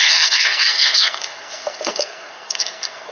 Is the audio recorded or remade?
remade